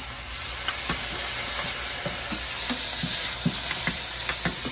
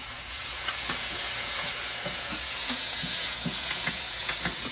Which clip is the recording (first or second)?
first